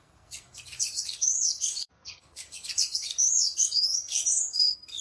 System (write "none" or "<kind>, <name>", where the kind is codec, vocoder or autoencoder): codec, SNAC